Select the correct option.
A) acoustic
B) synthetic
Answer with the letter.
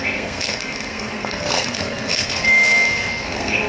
B